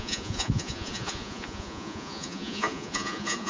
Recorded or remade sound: remade